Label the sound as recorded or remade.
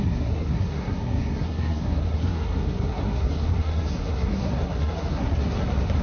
remade